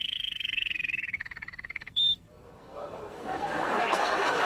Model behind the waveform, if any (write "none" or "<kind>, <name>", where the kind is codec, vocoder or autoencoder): codec, SNAC